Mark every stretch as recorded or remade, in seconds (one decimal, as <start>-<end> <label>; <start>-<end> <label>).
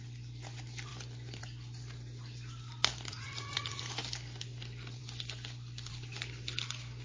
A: 0.0-3.1 recorded; 3.1-3.8 remade; 3.8-7.0 recorded